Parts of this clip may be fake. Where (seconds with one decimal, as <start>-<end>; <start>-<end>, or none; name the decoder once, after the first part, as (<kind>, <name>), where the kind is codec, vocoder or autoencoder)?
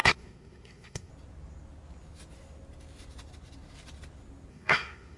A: 0.0-1.1 (codec, SNAC); 4.5-5.2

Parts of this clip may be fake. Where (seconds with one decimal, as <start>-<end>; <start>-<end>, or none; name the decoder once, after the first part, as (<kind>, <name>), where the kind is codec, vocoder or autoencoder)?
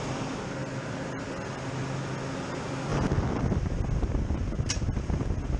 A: none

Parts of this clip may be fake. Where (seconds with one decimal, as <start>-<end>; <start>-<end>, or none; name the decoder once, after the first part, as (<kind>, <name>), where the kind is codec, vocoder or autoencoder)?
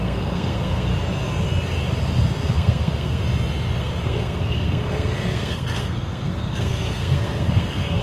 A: 0.0-0.9 (codec, SNAC); 2.5-3.2; 3.8-8.0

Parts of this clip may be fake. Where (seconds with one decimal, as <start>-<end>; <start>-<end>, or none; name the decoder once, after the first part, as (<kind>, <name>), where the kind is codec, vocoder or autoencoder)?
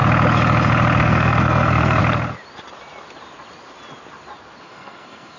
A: 1.0-2.0 (codec, SNAC); 4.6-5.4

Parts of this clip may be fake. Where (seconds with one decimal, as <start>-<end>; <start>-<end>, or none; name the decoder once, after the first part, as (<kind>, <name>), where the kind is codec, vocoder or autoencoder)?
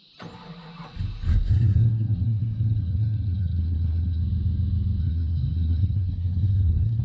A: 1.3-4.2 (codec, SNAC); 5.0-7.0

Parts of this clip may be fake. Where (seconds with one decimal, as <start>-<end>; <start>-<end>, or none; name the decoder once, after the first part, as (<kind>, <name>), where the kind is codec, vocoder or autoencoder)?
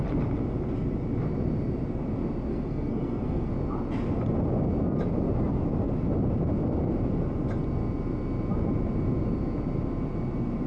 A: 2.5-3.5 (codec, SNAC)